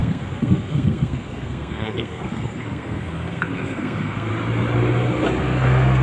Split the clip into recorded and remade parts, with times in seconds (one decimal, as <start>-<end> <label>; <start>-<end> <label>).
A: 0.0-4.3 remade; 4.3-5.4 recorded; 5.4-6.0 remade